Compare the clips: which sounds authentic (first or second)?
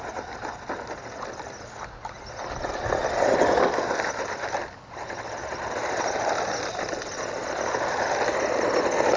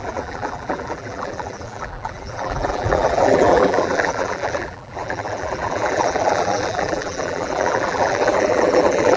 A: first